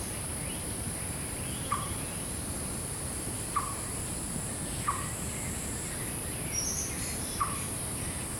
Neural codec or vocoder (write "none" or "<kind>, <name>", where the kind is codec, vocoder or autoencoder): vocoder, BigVGAN v2